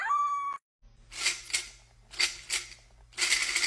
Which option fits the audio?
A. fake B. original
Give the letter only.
B